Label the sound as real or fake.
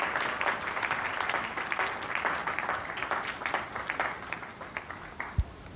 real